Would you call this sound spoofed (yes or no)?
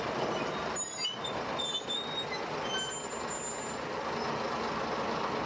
no